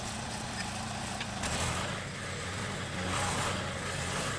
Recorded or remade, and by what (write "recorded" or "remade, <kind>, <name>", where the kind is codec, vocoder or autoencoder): recorded